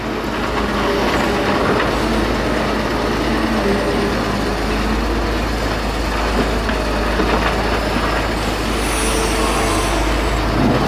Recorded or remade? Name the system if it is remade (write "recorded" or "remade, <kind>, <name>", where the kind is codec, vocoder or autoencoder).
recorded